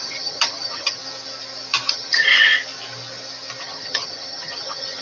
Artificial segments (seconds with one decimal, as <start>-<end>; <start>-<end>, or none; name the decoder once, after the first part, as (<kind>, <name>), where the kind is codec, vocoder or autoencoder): 0.0-1.0 (vocoder, HiFi-GAN); 1.9-2.5; 3.6-5.0